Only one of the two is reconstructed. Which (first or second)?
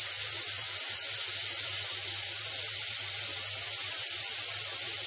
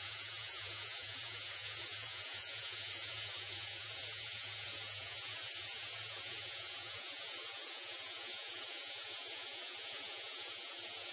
second